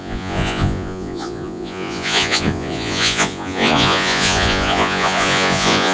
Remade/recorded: remade